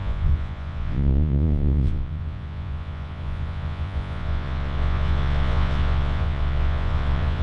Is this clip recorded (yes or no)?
no